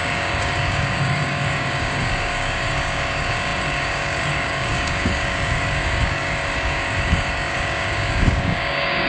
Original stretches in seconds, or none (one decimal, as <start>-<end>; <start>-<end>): none